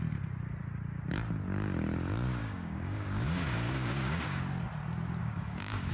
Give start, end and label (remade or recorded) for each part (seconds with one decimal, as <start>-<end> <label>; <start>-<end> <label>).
0.0-2.4 recorded; 2.4-4.4 remade; 4.4-5.2 recorded; 5.2-5.9 remade